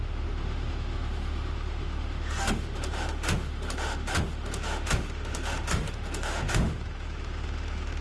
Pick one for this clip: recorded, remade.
remade